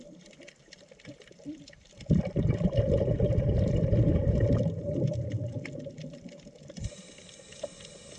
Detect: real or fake fake